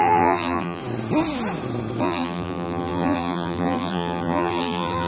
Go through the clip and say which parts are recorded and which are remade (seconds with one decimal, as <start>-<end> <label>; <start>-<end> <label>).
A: 0.0-0.8 remade; 0.8-2.0 recorded; 2.0-5.1 remade